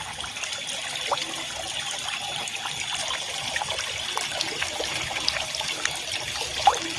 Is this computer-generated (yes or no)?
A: no